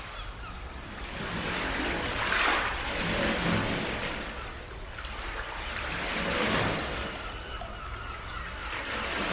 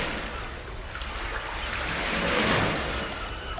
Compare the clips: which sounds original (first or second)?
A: second